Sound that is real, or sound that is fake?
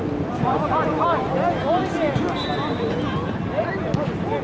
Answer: real